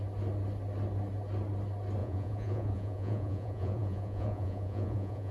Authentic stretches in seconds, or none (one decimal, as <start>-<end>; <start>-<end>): 0.0-2.0

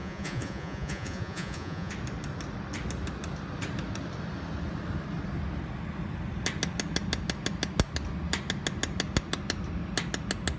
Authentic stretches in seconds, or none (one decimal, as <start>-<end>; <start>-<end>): 1.9-10.6

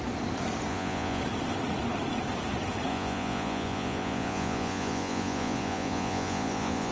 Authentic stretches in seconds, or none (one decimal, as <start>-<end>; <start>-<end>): 0.0-0.7; 1.2-2.9